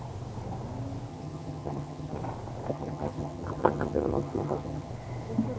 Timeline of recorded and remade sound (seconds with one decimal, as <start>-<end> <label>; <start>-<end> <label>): 0.0-1.1 recorded; 1.1-2.2 remade; 2.2-2.7 recorded; 2.7-4.9 remade; 4.9-5.6 recorded